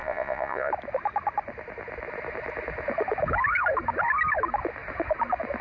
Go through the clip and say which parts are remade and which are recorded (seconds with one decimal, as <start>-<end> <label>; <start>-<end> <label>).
0.0-0.7 remade; 0.7-5.6 recorded